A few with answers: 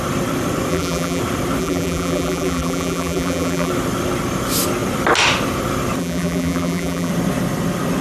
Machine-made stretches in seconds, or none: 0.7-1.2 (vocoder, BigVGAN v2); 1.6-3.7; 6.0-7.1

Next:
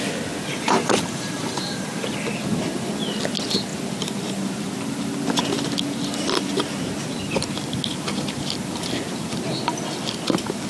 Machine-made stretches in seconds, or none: 0.5-2.1 (vocoder, BigVGAN v2)

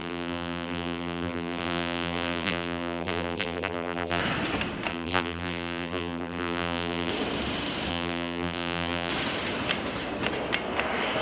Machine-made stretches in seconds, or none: 0.0-4.2 (vocoder, BigVGAN v2); 4.9-7.1; 7.9-9.1